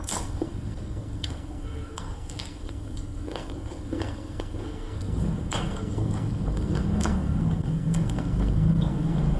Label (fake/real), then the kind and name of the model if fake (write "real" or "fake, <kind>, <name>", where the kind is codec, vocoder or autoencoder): fake, codec, SNAC